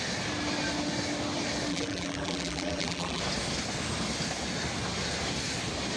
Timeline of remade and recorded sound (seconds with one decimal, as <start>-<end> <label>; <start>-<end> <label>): 0.0-1.7 recorded; 1.7-3.2 remade; 3.2-6.0 recorded